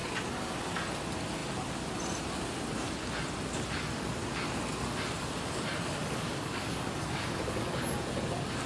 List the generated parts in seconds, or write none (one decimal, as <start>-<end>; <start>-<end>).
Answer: 6.0-7.8

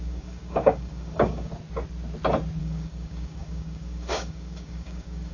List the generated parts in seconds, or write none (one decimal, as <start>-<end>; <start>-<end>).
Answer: 0.0-1.5; 2.6-5.3

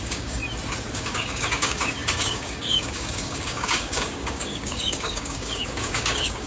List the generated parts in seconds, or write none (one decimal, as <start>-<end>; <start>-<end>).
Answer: 0.0-0.4; 0.9-6.5